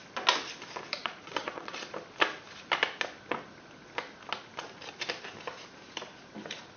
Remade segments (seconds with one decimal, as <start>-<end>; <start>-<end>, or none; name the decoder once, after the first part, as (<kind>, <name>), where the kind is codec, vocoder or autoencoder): 1.0-1.8 (vocoder, Vocos)